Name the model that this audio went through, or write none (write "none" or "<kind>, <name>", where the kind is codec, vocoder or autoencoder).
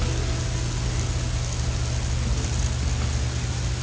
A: none